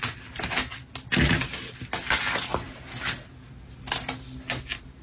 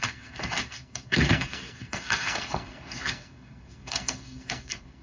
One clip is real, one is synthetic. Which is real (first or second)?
first